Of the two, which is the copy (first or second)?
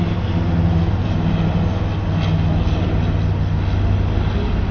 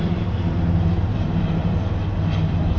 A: second